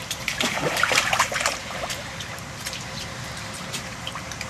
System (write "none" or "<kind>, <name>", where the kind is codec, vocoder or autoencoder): vocoder, BigVGAN v2